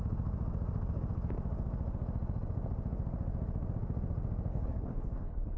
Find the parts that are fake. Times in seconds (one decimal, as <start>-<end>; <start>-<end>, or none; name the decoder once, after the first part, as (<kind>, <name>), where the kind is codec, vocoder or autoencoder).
4.5-5.6 (codec, HILCodec)